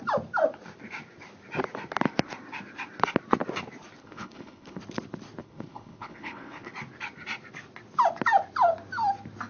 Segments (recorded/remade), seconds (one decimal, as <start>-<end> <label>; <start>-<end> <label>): 0.0-4.0 recorded; 4.0-4.8 remade; 4.8-5.4 recorded; 5.4-6.7 remade; 6.7-9.5 recorded